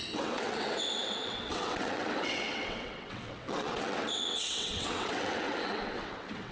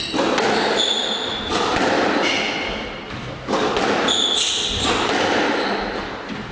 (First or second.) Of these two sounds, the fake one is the first